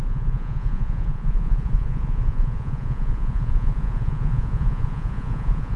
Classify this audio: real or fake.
fake